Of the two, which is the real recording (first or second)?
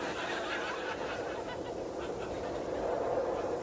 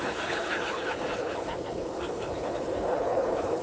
first